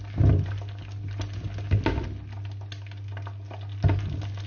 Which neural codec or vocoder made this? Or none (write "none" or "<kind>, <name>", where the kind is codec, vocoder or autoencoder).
none